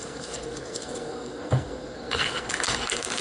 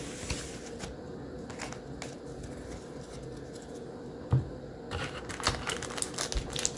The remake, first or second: first